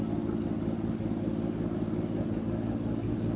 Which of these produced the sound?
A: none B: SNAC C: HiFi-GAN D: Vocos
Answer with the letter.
A